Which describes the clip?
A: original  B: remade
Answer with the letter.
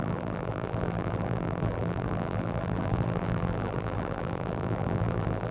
B